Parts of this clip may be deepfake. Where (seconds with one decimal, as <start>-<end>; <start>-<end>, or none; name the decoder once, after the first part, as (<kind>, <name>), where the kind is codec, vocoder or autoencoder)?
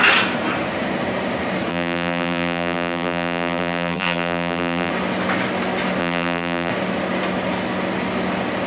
1.7-4.9 (vocoder, BigVGAN v2); 6.0-6.7